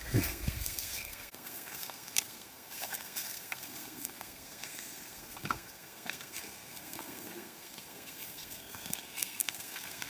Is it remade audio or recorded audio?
remade